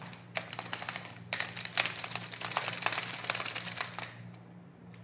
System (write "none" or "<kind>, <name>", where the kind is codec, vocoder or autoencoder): none